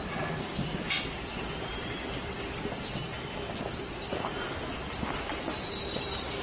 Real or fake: real